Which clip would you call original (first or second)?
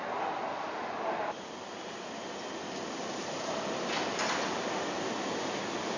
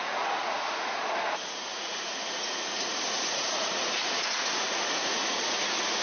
first